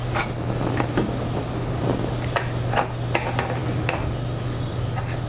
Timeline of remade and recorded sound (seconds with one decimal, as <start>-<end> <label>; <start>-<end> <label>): 0.0-5.3 recorded